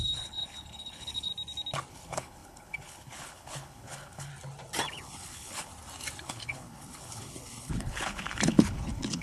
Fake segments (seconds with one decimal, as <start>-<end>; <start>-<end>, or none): 0.0-1.3; 1.9-4.3; 4.9-5.7; 6.2-9.2